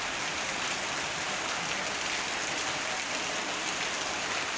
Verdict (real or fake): real